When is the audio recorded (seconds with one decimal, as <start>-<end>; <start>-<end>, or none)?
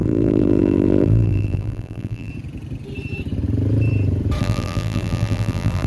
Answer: 2.3-4.4